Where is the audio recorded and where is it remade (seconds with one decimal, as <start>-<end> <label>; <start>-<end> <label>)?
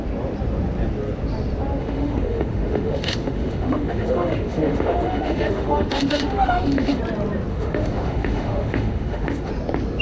0.0-1.8 recorded; 1.8-7.0 remade; 7.0-7.5 recorded; 7.5-9.5 remade; 9.5-10.0 recorded